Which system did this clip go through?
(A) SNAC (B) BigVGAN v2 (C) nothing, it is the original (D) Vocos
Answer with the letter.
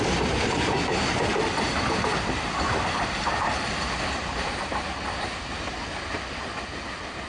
C